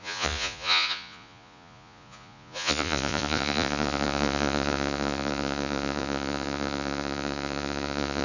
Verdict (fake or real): fake